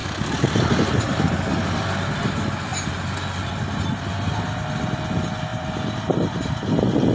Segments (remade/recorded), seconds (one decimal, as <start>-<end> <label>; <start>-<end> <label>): 0.0-1.8 remade; 1.8-5.5 recorded; 5.5-6.6 remade; 6.6-7.1 recorded